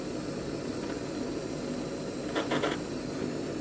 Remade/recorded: recorded